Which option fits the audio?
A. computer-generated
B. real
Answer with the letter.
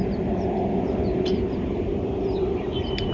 B